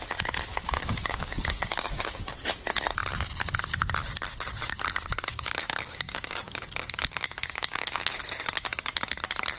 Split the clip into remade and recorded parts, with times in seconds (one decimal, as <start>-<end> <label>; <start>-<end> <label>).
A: 0.0-0.5 recorded; 0.5-2.3 remade; 2.3-5.3 recorded; 5.3-8.2 remade; 8.2-9.6 recorded